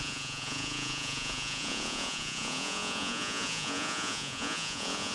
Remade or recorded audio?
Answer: remade